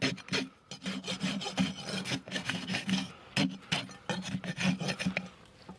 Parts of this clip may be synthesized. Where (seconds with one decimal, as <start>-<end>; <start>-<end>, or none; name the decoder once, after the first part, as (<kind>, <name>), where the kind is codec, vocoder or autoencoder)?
1.9-3.1 (codec, SNAC)